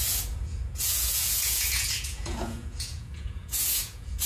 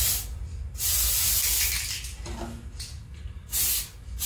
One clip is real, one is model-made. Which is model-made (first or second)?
first